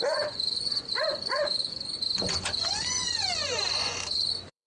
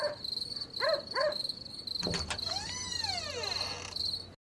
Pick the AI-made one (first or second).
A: first